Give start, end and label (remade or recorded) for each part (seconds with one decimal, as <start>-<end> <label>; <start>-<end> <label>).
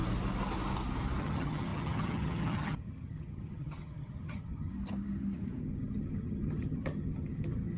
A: 0.0-1.2 recorded; 1.2-4.7 remade; 4.7-5.6 recorded; 5.6-7.8 remade